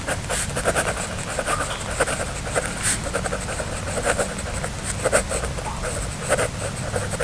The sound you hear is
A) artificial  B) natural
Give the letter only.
B